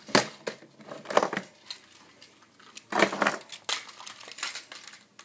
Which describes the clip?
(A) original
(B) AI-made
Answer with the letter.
A